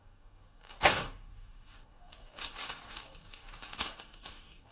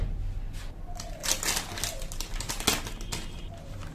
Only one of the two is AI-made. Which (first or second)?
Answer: first